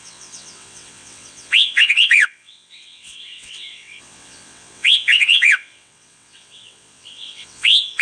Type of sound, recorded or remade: remade